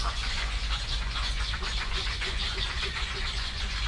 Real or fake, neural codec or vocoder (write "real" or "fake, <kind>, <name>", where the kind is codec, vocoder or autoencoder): fake, vocoder, Vocos